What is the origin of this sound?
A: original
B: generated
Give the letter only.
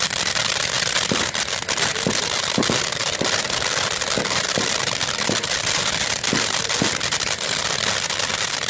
A